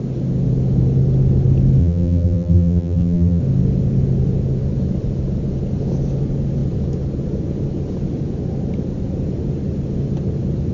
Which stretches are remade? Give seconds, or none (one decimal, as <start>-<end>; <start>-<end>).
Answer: 1.8-3.4